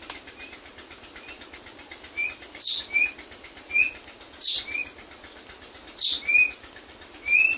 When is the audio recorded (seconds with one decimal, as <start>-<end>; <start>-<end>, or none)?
0.0-7.6